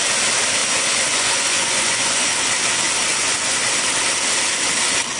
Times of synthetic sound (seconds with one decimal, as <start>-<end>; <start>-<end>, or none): 0.6-2.3; 3.1-3.6